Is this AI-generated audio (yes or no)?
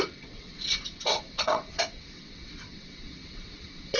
yes